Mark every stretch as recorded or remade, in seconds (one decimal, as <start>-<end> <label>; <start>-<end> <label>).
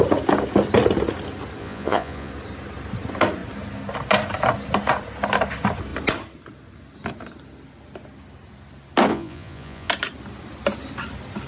0.0-1.6 recorded; 1.6-2.3 remade; 2.3-9.1 recorded; 9.1-9.9 remade; 9.9-11.5 recorded